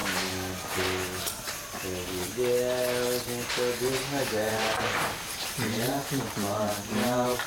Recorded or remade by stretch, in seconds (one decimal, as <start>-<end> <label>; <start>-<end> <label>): 0.0-4.5 recorded; 4.5-7.5 remade